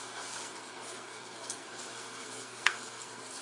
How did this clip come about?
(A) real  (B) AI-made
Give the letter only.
B